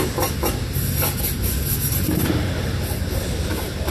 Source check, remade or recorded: recorded